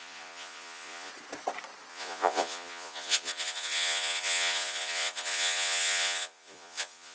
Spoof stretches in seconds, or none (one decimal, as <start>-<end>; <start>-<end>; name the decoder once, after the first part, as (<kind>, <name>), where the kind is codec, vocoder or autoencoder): 0.0-1.1 (vocoder, Vocos); 1.9-7.1